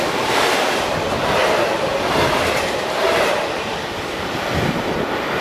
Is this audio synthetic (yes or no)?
yes